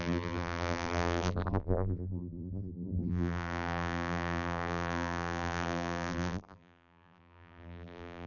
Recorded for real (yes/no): no